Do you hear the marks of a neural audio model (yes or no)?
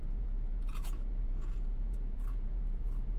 yes